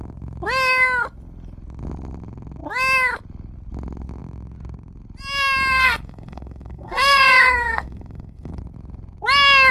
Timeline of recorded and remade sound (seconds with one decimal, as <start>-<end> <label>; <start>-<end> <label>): 0.0-5.7 recorded; 5.7-8.6 remade; 8.6-9.7 recorded